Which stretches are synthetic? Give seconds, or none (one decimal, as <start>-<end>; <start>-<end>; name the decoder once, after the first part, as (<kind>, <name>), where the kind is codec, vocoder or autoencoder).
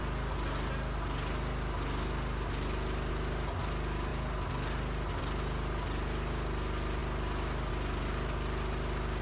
none